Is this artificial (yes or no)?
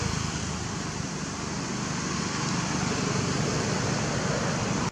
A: no